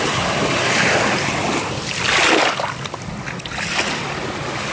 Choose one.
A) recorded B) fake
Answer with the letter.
A